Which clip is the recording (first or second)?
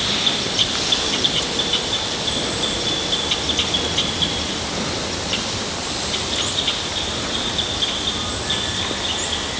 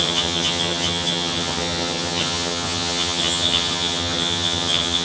first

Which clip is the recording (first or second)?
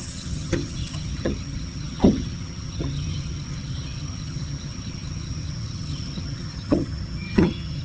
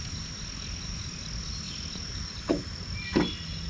second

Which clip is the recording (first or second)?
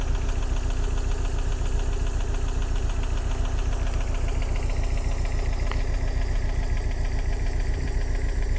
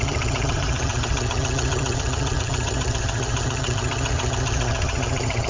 first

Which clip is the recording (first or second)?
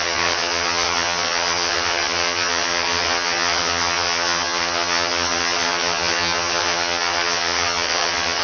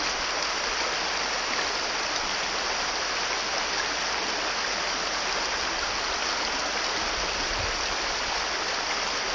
second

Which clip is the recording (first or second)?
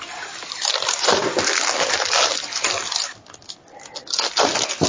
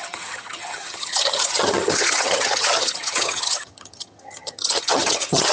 first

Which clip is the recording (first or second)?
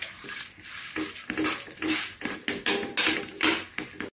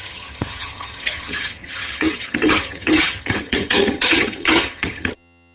first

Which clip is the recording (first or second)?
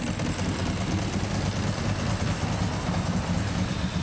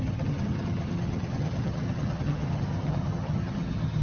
first